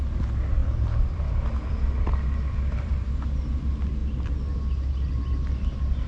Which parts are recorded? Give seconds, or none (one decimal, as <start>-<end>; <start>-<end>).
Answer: 0.0-0.6; 2.9-6.1